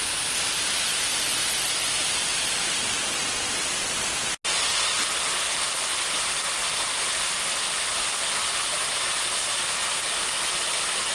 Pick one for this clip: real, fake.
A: real